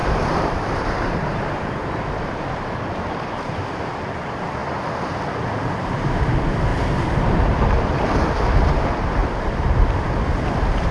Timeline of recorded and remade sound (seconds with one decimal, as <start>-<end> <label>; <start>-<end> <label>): 0.0-3.9 remade; 3.9-6.7 recorded; 6.7-8.7 remade; 8.7-9.2 recorded; 9.2-10.1 remade; 10.1-10.9 recorded